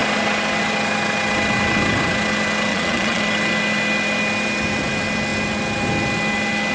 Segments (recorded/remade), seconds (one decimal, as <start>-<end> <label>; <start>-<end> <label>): 0.0-2.7 recorded; 2.7-3.2 remade; 3.2-6.7 recorded